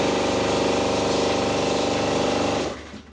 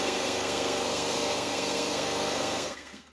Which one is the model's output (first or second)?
second